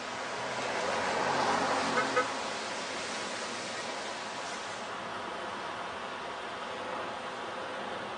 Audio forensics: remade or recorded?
recorded